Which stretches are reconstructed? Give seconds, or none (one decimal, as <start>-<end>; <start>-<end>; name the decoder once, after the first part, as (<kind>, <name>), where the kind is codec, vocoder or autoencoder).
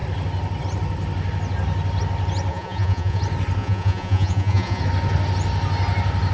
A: 2.5-3.2 (vocoder, Vocos); 3.6-4.8